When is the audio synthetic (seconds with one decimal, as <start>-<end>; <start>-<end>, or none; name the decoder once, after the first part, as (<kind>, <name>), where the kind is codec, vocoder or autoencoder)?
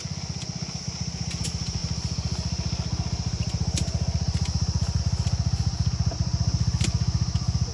none